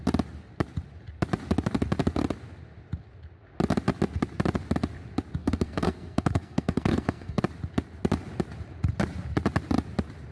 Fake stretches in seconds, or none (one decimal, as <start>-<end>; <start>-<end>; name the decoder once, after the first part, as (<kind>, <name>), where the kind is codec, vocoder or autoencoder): 5.4-7.4 (codec, SNAC)

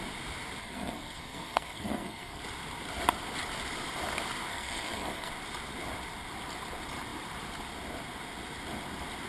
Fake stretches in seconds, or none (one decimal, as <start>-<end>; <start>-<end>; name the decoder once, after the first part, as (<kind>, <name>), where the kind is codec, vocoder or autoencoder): 0.6-2.4 (codec, SNAC); 4.5-5.3